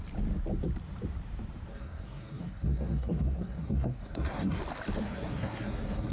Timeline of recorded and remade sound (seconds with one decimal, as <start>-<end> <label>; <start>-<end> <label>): 0.0-1.7 recorded; 1.7-4.6 remade; 4.6-5.0 recorded; 5.0-6.1 remade